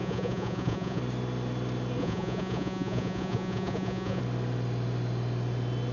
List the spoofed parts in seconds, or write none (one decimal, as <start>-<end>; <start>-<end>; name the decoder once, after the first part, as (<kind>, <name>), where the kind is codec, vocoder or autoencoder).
0.0-1.0 (vocoder, Vocos); 2.0-4.2